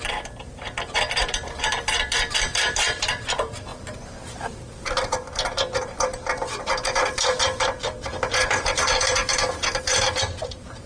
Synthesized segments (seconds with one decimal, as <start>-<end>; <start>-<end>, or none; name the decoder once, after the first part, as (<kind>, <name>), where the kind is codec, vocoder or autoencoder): 0.0-9.2 (vocoder, BigVGAN v2); 9.8-10.9